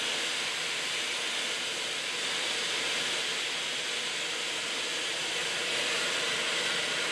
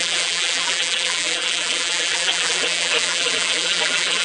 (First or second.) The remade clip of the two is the second